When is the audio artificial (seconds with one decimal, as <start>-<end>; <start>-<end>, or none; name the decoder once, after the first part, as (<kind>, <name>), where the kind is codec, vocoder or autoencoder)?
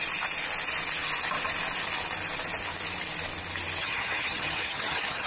3.8-5.3 (vocoder, HiFi-GAN)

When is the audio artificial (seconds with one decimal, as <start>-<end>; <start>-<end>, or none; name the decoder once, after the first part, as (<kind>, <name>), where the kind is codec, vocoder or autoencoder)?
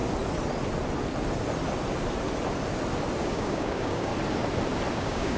3.2-4.1 (codec, DAC); 4.9-5.4